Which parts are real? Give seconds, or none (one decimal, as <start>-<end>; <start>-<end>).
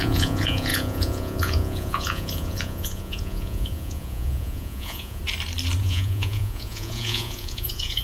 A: 5.2-5.8